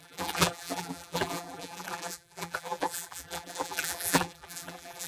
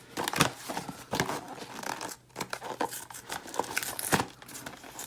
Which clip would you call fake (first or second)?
first